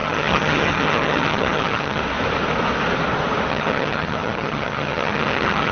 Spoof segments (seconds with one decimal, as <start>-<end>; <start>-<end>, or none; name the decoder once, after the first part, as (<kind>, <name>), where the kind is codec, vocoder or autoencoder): 0.0-2.0 (vocoder, HiFi-GAN); 3.5-5.7